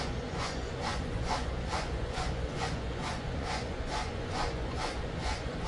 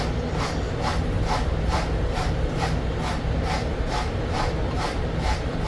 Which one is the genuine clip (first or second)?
second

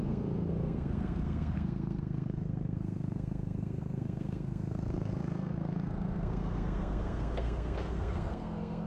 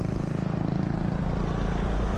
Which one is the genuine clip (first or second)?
second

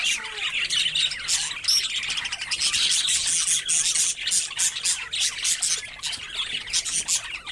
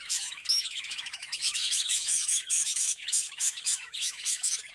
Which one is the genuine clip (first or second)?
first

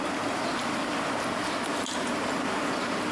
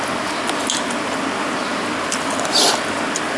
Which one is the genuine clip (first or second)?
second